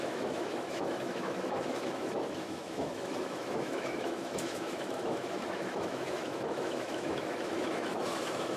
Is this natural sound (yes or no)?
no